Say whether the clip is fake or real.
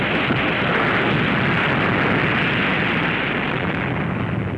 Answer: real